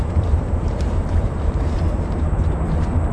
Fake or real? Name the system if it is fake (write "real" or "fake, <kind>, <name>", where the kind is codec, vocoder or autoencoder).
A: fake, vocoder, BigVGAN v2